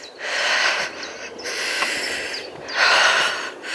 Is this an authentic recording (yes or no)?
yes